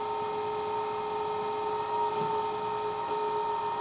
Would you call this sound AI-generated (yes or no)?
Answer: no